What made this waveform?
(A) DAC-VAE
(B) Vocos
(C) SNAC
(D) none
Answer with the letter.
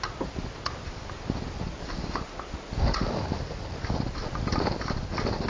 D